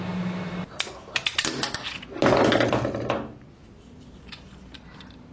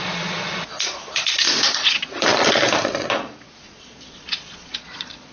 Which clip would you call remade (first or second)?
second